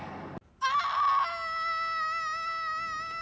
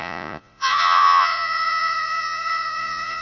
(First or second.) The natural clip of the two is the first